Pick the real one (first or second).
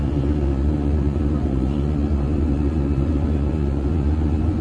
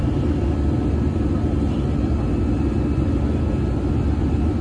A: second